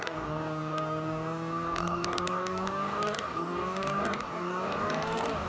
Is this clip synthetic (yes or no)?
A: yes